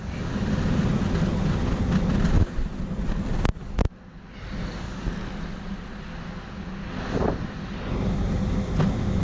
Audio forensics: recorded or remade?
recorded